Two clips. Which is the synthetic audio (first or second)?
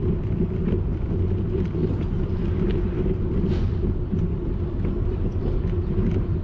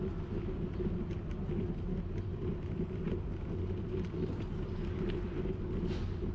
first